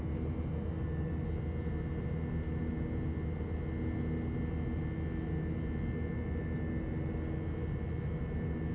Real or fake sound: real